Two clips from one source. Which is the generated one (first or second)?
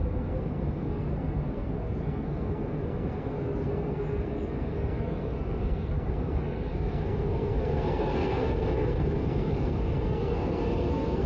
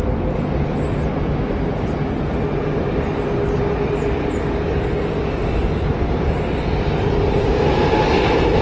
first